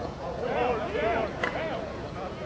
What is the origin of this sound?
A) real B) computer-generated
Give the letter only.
B